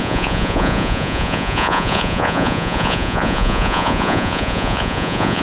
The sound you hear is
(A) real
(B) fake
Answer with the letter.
B